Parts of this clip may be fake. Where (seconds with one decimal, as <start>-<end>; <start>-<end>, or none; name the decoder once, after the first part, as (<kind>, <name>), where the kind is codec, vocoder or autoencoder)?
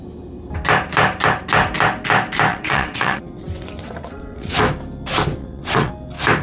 2.5-4.6 (vocoder, WaveNeXt); 5.4-5.9